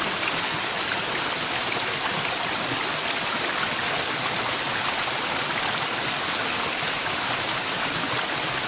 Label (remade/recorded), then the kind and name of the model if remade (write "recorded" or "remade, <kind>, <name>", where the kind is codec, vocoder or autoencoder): recorded